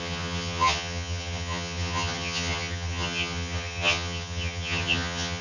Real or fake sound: fake